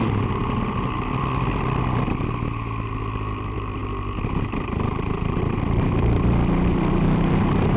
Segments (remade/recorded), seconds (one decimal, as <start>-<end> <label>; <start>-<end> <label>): 0.0-7.8 remade